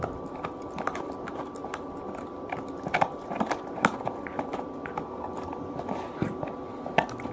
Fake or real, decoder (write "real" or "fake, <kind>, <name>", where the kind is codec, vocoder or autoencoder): real